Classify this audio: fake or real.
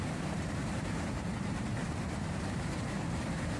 fake